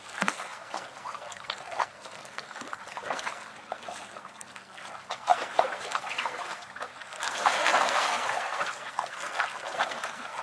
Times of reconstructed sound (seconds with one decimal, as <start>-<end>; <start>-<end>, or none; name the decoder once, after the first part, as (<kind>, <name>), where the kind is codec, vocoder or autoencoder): 0.0-10.4 (codec, SNAC)